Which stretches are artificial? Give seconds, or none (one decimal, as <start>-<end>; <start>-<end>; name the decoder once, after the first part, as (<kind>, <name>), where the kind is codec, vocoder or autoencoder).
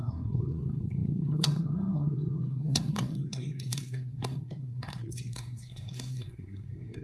0.0-7.0 (codec, SNAC)